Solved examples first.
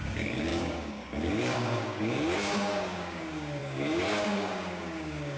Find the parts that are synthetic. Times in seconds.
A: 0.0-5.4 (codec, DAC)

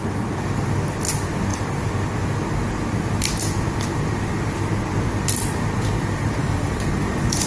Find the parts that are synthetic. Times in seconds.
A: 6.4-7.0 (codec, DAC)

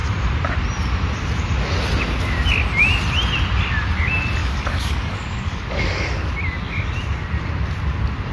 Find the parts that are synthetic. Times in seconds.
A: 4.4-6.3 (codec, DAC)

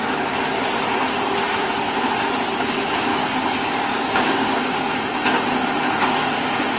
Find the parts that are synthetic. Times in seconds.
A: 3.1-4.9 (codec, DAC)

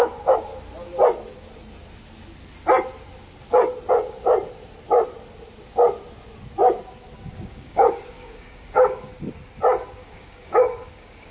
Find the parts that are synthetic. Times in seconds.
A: 0.0-0.5 (codec, DAC); 3.9-4.3; 7.1-9.1; 9.9-11.3